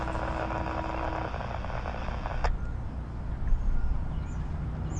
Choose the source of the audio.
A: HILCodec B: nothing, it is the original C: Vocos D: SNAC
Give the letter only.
B